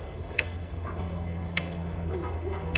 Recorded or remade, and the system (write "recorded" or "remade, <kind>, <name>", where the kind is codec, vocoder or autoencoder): remade, codec, SNAC